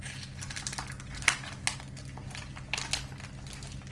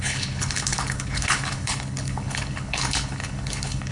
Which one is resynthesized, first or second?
second